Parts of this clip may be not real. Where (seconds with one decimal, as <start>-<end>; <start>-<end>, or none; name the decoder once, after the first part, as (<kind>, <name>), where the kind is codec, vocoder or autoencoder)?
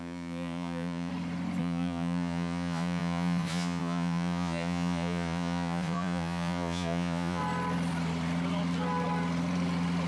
0.0-1.1 (vocoder, Vocos); 1.6-7.4